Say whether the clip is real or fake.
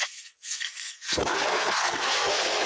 fake